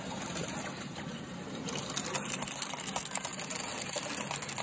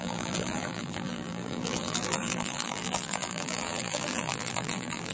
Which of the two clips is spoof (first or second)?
second